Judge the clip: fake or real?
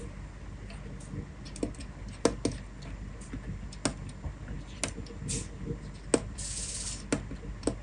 real